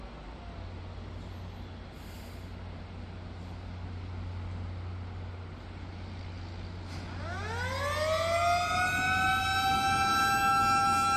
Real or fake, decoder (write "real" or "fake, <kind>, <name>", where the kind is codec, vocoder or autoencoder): real